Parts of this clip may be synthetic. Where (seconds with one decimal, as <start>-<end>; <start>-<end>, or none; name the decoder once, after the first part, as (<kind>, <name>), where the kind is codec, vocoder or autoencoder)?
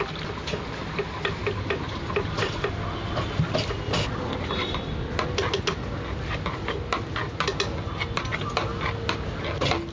none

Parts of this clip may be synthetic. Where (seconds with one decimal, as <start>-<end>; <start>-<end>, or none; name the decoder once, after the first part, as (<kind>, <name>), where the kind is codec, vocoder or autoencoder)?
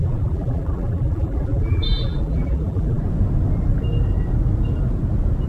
0.0-3.0 (vocoder, BigVGAN v2)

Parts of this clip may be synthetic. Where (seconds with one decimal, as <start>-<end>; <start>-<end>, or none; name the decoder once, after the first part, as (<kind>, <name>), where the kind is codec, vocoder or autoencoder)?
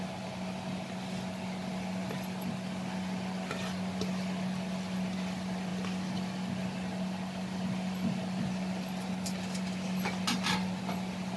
none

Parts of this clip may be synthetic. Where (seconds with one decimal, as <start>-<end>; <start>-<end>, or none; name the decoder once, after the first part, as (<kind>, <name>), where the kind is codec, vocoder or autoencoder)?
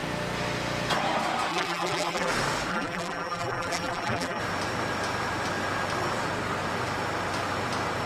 1.5-2.3 (vocoder, BigVGAN v2); 2.7-4.4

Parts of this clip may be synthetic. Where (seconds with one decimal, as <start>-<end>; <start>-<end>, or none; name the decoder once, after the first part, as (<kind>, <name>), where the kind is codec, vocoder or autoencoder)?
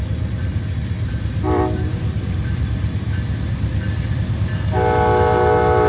0.8-4.3 (vocoder, BigVGAN v2)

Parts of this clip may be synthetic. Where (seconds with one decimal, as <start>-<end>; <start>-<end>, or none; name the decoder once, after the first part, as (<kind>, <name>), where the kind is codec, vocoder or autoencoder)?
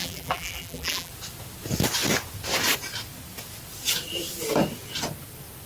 0.0-1.1 (vocoder, BigVGAN v2)